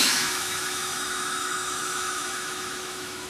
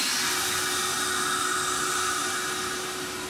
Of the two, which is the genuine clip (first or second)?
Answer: second